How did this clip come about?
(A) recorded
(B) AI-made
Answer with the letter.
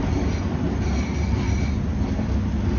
A